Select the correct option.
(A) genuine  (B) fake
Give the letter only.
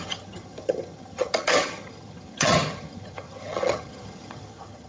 B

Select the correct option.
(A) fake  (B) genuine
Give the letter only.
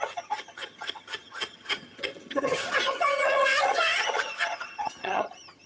A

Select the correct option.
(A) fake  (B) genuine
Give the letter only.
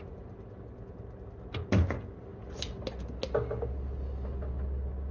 B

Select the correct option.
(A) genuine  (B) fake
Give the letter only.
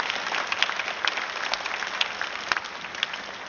A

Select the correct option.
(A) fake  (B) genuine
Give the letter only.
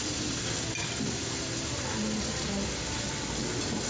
B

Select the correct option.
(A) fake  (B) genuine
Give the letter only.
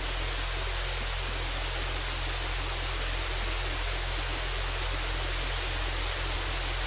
B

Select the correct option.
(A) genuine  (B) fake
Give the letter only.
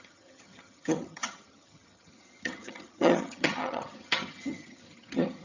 B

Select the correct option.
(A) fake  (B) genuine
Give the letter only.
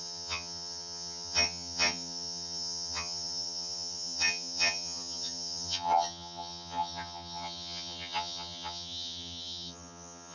A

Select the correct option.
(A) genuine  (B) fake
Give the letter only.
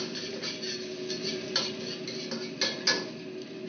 A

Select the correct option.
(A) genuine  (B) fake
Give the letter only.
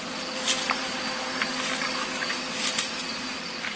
A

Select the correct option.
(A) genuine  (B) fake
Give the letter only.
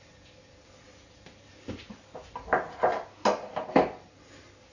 A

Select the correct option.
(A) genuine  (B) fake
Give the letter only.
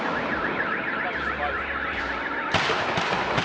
A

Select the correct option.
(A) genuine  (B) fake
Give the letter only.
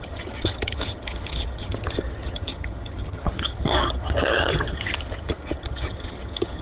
B